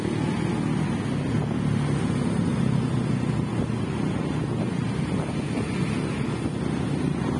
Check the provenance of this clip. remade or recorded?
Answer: recorded